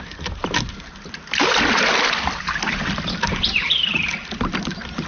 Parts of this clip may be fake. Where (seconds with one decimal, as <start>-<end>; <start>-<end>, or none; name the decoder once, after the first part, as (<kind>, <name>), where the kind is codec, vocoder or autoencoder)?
none